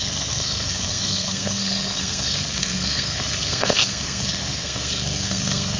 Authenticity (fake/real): fake